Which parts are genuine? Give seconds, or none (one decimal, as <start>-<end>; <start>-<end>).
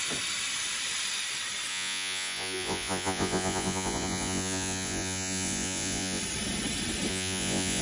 0.0-1.7; 6.2-7.1